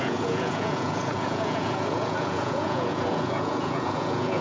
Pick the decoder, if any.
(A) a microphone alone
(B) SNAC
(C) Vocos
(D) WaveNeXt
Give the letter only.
C